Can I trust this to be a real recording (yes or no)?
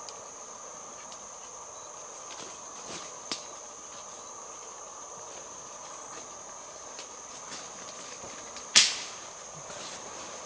yes